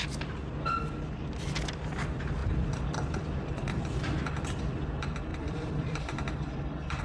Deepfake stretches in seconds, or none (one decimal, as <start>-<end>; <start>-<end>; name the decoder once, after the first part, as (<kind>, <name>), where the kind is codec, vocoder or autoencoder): 2.4-4.6 (vocoder, BigVGAN v2); 5.3-7.0